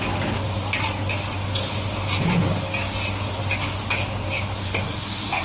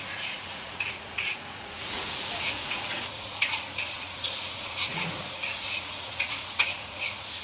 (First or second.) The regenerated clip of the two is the second